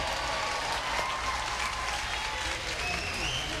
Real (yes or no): yes